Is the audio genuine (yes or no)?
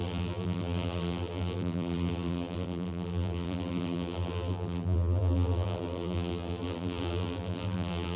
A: no